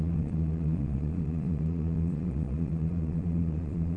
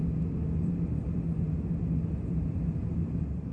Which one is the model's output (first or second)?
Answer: first